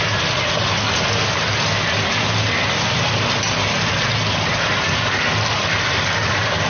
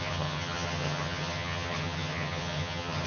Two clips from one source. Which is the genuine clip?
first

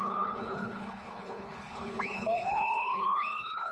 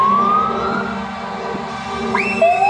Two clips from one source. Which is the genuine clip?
second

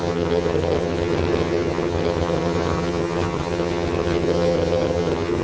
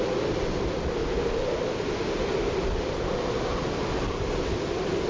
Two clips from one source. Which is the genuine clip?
second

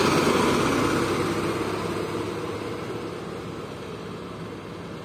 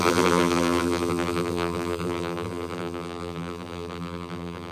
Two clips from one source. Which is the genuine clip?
first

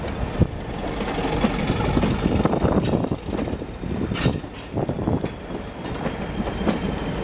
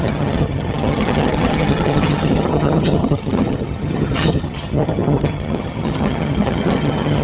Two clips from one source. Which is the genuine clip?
first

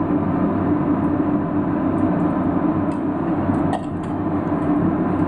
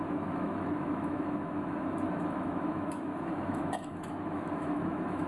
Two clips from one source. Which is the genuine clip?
first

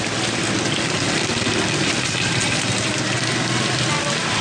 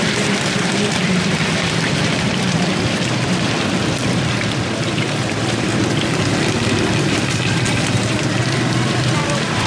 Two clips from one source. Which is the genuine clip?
first